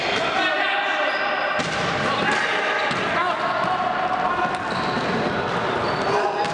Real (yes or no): yes